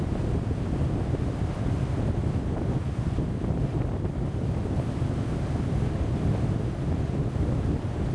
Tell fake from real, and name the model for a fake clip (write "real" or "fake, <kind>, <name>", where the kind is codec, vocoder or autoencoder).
real